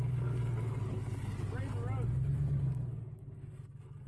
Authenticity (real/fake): real